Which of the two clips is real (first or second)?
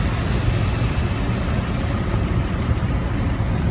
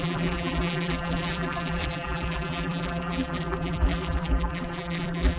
first